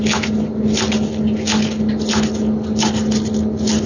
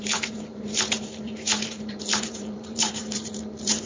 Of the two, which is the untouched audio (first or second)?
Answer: first